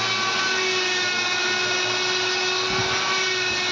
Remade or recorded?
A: recorded